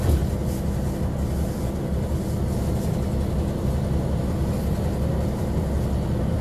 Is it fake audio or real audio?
real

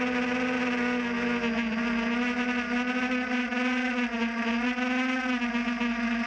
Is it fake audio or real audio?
real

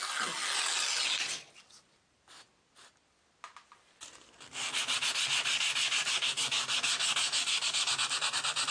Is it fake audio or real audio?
real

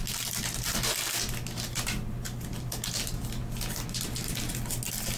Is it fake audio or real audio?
real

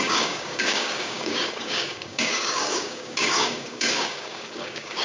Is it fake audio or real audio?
fake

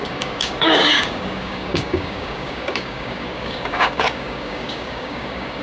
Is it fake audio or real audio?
fake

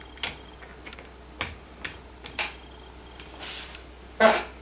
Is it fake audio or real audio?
real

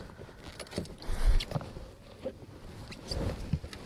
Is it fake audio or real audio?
real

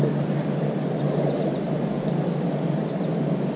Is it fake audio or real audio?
real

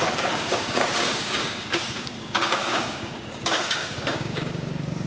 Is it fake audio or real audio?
fake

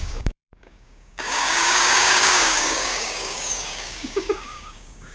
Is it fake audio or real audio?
fake